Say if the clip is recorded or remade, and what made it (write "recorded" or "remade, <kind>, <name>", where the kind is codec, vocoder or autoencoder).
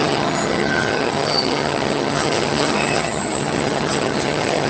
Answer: remade, vocoder, HiFi-GAN